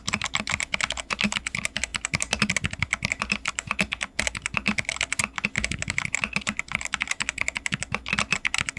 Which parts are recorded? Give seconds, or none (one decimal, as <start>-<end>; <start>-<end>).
0.0-8.8